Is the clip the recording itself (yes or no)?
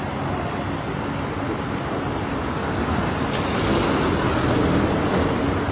yes